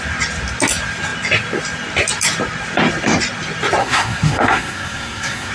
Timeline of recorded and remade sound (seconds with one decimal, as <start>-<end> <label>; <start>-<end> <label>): 0.0-3.8 recorded; 3.8-5.5 remade